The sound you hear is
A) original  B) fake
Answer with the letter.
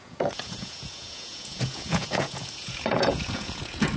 B